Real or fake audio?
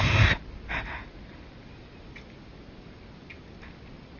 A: real